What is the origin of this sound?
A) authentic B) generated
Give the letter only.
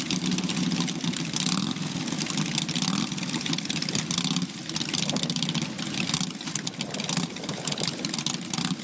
A